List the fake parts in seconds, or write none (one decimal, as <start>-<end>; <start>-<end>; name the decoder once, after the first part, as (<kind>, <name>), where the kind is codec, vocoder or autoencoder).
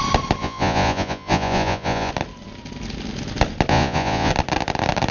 0.4-2.1 (vocoder, Vocos); 3.7-4.3